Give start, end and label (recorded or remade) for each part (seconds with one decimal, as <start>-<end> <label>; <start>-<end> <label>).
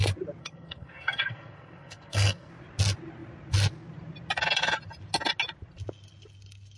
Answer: 0.0-0.4 recorded; 0.4-2.5 remade; 2.5-6.8 recorded